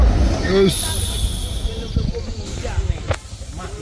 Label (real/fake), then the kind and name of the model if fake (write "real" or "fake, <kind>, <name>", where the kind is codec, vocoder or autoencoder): real